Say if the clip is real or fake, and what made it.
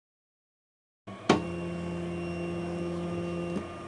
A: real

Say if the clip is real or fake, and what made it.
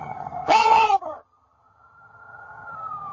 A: fake, vocoder, HiFi-GAN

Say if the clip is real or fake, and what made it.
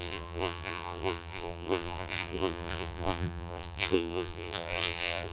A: fake, vocoder, BigVGAN v2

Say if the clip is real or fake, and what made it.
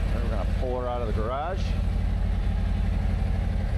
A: real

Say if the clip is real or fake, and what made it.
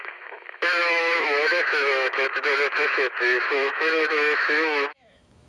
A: fake, autoencoder, DAC-VAE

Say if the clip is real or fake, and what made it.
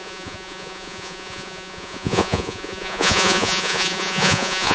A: fake, vocoder, Vocos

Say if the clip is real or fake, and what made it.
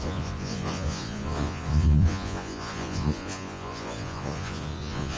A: fake, vocoder, Vocos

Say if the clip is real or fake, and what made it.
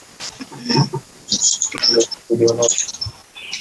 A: real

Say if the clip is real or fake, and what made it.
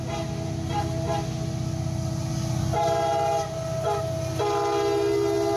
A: real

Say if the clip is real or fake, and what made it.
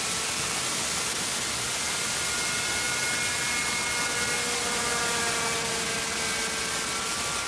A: real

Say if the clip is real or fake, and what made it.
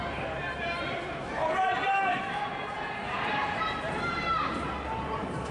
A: fake, vocoder, BigVGAN v2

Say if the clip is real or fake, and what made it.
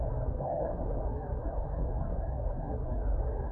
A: fake, codec, SNAC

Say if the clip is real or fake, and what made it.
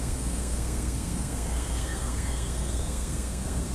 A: fake, codec, SNAC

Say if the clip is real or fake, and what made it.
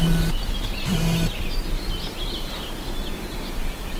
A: real